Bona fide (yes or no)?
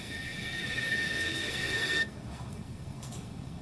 no